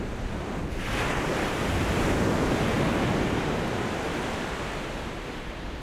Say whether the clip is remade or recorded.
recorded